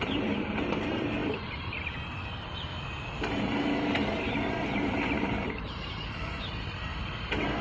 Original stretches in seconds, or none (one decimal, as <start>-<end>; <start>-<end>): 6.9-7.6